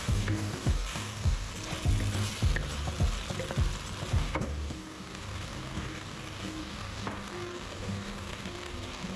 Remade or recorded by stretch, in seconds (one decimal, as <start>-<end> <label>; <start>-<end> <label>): 0.0-1.5 remade; 1.5-4.1 recorded; 4.1-9.2 remade

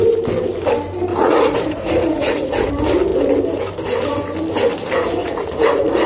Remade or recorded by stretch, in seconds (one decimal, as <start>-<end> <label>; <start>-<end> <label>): 0.0-1.1 recorded; 1.1-2.7 remade; 2.7-5.2 recorded; 5.2-6.1 remade

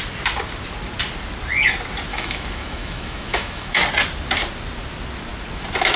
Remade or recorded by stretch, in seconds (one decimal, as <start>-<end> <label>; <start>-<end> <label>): 0.0-2.1 recorded; 2.1-3.8 remade; 3.8-6.0 recorded

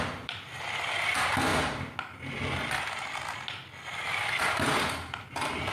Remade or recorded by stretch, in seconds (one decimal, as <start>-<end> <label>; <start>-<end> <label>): 0.0-5.7 recorded

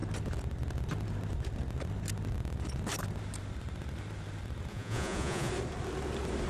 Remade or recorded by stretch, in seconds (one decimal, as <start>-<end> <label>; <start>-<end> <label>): 0.0-4.7 recorded; 4.7-5.5 remade; 5.5-6.5 recorded